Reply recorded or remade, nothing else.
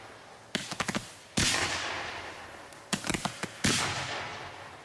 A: recorded